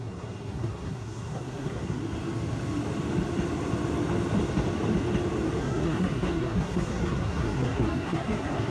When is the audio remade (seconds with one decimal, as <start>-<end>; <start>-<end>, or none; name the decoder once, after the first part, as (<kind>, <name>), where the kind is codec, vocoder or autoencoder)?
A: 0.0-2.0 (codec, SNAC); 5.6-8.7